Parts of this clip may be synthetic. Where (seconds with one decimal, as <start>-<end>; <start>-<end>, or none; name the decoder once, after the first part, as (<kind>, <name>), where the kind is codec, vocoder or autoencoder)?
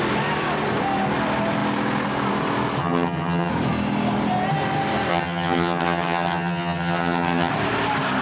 2.8-3.5 (vocoder, HiFi-GAN); 5.1-7.5